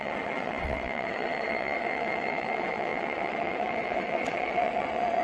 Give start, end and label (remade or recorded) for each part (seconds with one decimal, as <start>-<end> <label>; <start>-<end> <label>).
0.0-5.2 remade